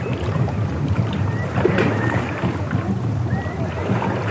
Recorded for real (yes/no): no